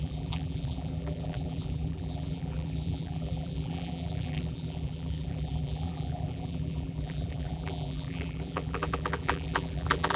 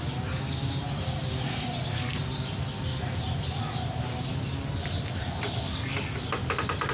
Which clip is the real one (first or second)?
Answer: second